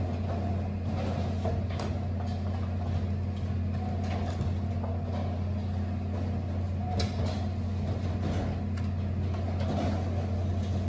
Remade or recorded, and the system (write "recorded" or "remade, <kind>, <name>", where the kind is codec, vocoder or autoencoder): recorded